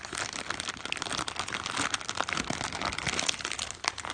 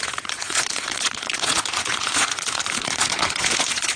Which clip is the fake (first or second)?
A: second